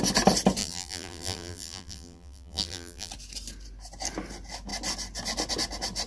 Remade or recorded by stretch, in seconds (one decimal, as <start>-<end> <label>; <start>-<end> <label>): 0.0-0.6 recorded; 0.6-3.1 remade; 3.1-6.1 recorded